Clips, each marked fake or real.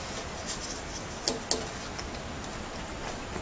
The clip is real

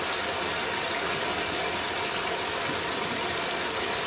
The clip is real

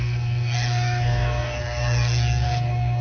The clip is fake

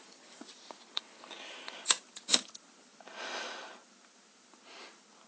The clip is fake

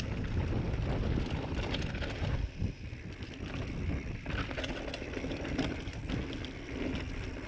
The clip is real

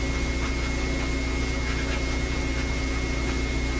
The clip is real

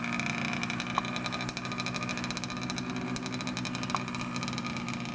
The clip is real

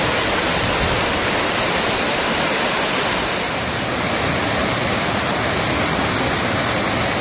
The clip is real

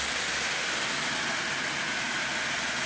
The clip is real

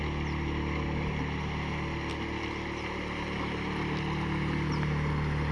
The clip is real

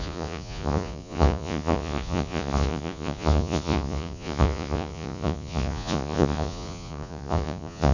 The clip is fake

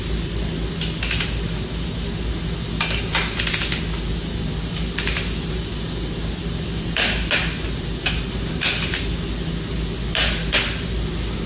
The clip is real